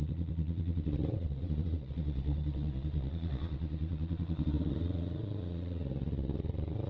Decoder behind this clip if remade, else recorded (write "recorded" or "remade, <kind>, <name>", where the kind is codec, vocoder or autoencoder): remade, vocoder, Vocos